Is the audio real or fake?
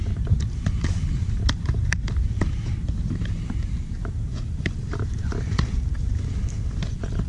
fake